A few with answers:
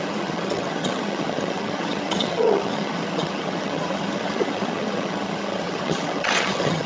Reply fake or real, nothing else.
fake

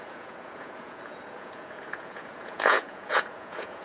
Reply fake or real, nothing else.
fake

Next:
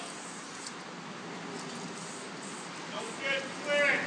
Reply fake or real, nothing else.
real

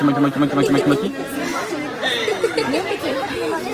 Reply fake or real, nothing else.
real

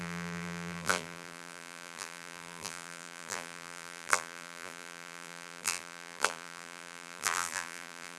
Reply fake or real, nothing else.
fake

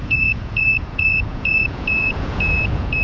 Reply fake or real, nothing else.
fake